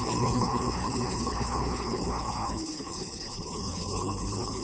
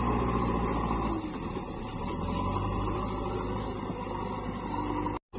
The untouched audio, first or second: second